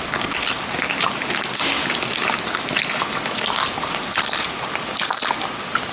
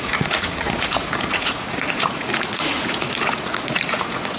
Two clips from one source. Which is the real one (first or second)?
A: first